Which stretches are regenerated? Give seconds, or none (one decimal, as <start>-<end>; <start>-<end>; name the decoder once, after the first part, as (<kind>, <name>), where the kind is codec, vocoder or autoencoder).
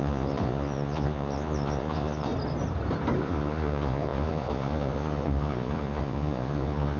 0.0-2.3 (vocoder, Vocos); 3.2-7.0